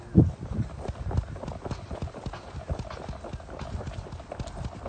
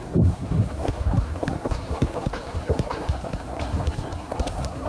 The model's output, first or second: second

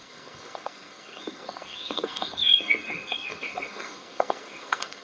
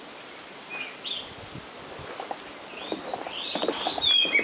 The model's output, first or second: first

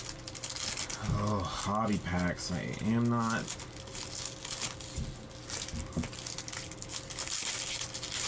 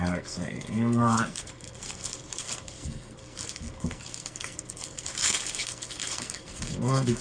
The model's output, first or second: second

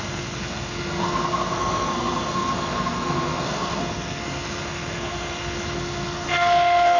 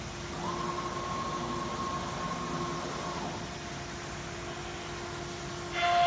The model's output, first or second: first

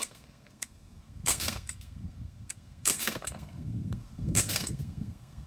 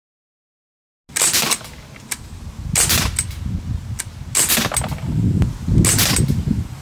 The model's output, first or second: first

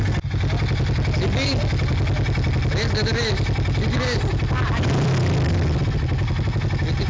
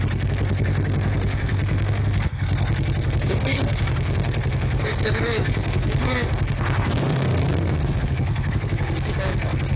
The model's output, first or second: second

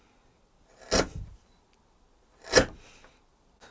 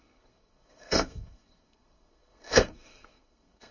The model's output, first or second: second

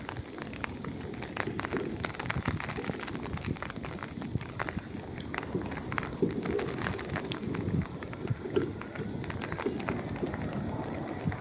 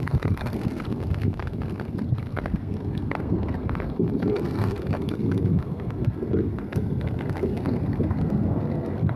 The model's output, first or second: second